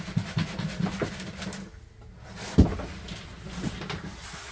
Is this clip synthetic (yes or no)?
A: no